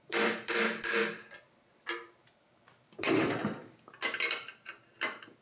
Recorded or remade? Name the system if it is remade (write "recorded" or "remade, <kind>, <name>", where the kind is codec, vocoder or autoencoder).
remade, vocoder, BigVGAN v2